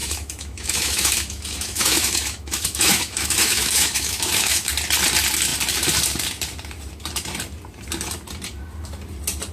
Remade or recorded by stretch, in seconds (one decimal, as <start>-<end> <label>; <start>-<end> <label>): 0.0-4.7 remade; 4.7-9.5 recorded